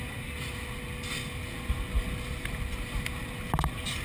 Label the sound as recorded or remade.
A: recorded